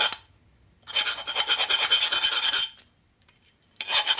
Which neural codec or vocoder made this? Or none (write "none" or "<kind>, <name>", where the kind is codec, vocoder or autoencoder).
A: none